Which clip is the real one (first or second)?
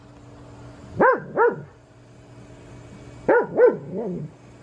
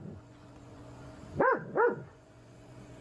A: first